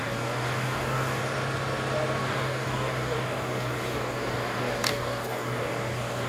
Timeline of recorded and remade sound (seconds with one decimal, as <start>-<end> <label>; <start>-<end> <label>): 0.0-1.2 remade; 1.2-2.2 recorded; 2.2-6.3 remade